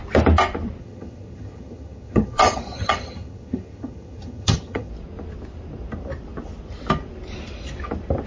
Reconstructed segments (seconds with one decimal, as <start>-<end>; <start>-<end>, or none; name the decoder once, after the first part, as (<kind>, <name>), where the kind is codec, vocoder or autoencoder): 0.8-4.9 (vocoder, HiFi-GAN)